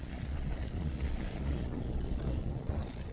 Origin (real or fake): fake